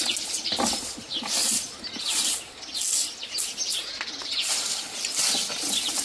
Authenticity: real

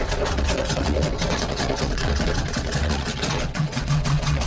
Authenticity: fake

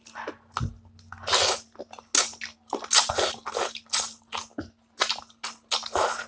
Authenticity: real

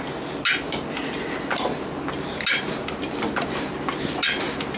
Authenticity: real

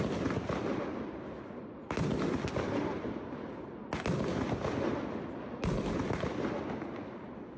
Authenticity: real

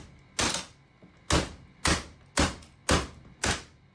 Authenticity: real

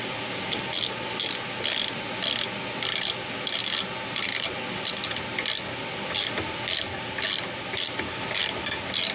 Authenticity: real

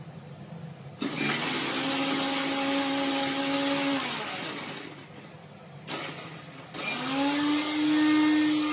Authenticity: real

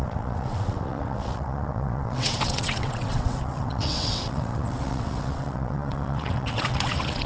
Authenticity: fake